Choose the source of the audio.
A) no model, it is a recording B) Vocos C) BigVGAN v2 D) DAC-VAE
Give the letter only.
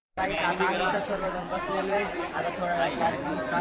C